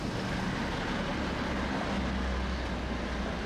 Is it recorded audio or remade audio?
recorded